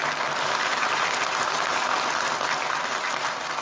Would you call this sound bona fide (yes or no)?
yes